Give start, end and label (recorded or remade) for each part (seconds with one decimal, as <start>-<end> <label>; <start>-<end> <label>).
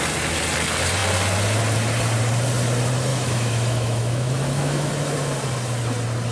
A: 0.0-3.1 recorded; 3.1-4.9 remade; 4.9-6.3 recorded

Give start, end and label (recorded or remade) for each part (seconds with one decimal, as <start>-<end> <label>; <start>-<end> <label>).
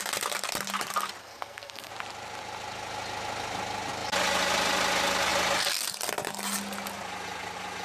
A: 0.0-1.2 recorded; 1.2-1.9 remade; 1.9-7.8 recorded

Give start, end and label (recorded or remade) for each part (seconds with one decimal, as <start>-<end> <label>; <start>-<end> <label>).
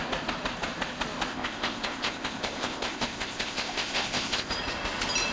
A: 0.0-1.3 recorded; 1.3-4.5 remade; 4.5-5.3 recorded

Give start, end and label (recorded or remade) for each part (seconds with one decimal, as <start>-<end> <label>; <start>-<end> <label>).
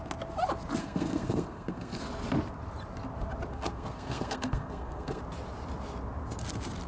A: 0.0-0.8 recorded; 0.8-2.0 remade; 2.0-3.5 recorded; 3.5-5.2 remade; 5.2-6.9 recorded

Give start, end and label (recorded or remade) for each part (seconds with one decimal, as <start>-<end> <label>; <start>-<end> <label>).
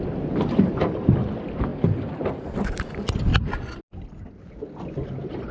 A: 0.0-5.5 recorded